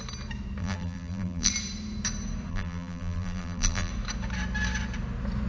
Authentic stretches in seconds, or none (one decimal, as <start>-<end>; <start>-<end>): 0.0-0.6; 1.5-2.5; 3.9-5.5